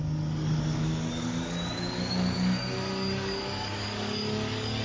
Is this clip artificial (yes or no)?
yes